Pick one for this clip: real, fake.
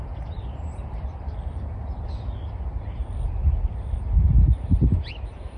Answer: real